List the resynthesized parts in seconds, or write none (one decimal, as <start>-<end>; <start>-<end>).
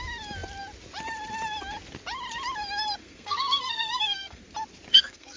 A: 3.0-4.4; 4.9-5.4